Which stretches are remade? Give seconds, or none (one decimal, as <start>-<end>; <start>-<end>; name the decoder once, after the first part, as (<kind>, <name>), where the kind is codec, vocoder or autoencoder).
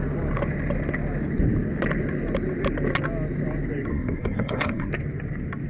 3.9-4.9 (codec, SNAC)